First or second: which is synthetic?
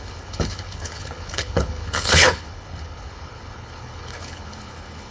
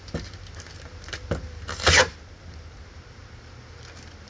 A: first